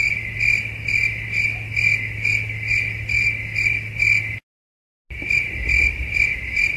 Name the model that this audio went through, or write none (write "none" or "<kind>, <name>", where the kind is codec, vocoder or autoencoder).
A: none